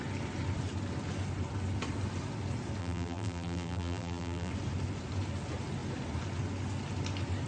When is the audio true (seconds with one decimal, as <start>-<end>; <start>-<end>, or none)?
0.0-2.8; 4.5-7.5